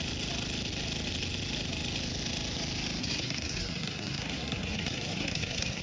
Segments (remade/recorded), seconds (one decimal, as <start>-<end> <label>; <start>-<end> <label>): 0.0-3.0 recorded; 3.0-5.8 remade